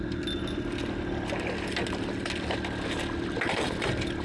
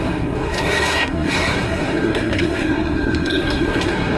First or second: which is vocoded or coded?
second